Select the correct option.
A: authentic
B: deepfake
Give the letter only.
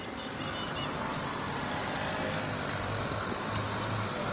A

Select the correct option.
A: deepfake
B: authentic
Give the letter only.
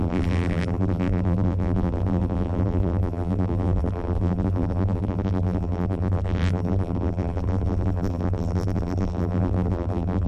A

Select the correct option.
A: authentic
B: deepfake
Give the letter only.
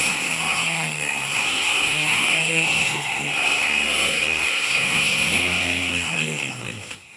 B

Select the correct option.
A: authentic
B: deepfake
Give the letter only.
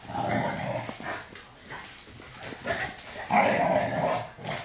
A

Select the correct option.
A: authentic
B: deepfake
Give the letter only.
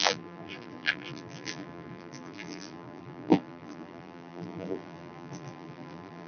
B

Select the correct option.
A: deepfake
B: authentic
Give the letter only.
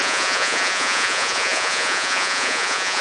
A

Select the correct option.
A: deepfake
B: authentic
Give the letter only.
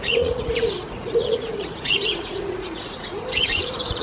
A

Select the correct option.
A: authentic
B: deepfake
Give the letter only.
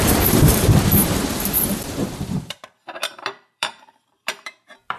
B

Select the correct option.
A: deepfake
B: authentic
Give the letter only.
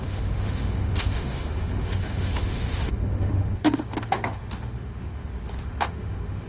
A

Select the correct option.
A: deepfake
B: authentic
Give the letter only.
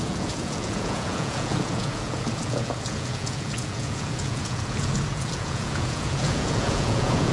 A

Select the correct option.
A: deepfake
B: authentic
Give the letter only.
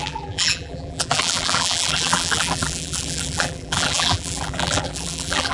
A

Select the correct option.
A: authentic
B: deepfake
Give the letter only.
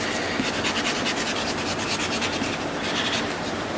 A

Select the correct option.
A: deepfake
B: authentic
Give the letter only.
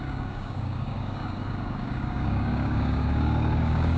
A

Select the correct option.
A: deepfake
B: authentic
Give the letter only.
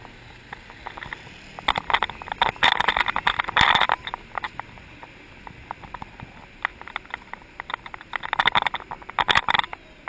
B